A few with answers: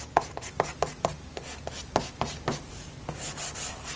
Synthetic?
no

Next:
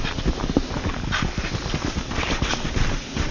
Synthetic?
no